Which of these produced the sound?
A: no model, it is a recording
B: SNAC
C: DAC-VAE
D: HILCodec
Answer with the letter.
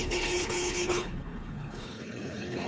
D